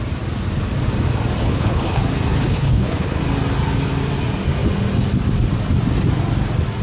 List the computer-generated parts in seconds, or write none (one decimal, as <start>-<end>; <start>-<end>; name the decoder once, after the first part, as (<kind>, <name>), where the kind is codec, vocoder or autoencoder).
1.4-2.0 (codec, HILCodec); 2.4-3.2